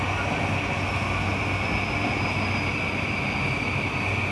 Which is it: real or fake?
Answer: real